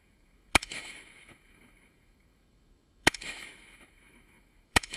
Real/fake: fake